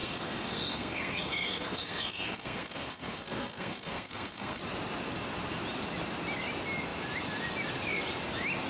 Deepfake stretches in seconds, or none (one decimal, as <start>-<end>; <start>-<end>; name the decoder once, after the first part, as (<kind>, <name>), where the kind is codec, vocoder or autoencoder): 0.0-4.6 (codec, SNAC)